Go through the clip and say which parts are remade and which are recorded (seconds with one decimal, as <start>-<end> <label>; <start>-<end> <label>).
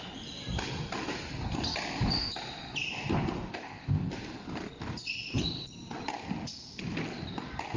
0.0-3.5 recorded; 3.5-4.1 remade; 4.1-7.8 recorded